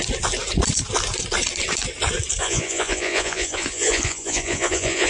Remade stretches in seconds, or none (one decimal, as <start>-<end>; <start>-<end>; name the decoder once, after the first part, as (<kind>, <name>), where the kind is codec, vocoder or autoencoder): 2.4-5.1 (vocoder, Vocos)